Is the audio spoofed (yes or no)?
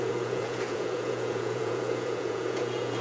yes